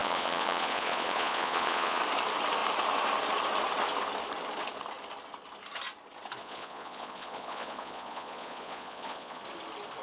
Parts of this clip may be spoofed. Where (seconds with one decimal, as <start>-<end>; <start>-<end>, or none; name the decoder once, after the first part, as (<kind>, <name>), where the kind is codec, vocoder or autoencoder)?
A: 0.0-2.0 (vocoder, Vocos); 6.4-9.4